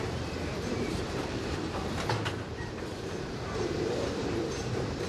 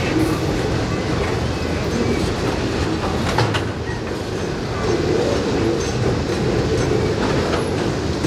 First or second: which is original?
second